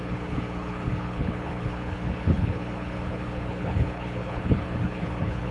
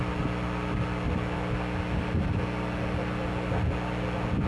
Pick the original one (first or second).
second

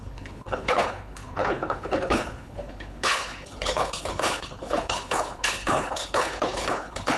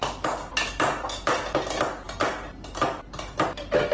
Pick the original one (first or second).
second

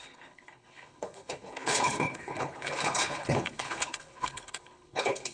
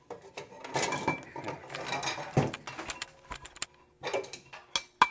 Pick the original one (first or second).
second